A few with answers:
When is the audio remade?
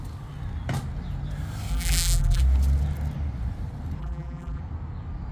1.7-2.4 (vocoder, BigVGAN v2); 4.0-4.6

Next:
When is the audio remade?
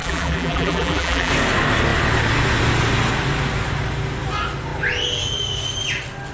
0.0-1.3 (vocoder, BigVGAN v2)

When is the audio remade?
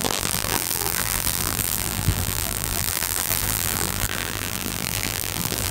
0.0-5.7 (vocoder, BigVGAN v2)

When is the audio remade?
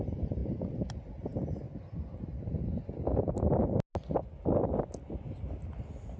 none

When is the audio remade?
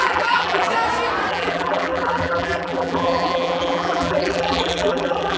0.0-0.7 (vocoder, BigVGAN v2); 1.3-5.4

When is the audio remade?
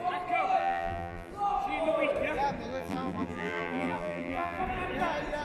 0.6-1.3 (vocoder, BigVGAN v2); 2.7-4.6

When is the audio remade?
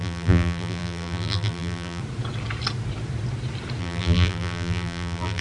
0.0-2.0 (vocoder, BigVGAN v2); 3.8-5.4